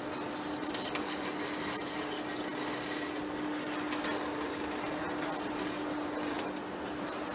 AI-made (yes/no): no